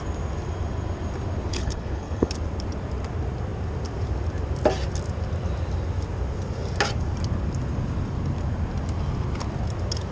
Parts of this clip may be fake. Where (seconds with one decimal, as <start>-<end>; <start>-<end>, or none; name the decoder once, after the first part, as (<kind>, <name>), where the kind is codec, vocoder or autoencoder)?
1.5-2.3 (codec, HILCodec)